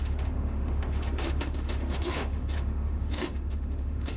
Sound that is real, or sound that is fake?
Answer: fake